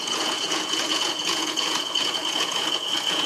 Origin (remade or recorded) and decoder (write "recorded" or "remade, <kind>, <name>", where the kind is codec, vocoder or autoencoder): remade, vocoder, Vocos